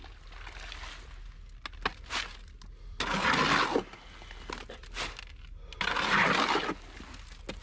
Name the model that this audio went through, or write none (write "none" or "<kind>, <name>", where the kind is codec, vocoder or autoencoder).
none